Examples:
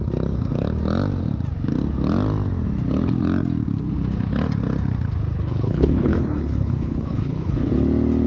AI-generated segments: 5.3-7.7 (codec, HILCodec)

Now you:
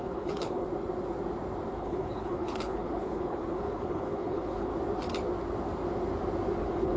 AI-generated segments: 0.0-0.7 (codec, HILCodec); 1.7-4.7; 6.6-7.0